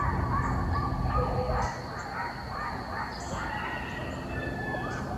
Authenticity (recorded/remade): recorded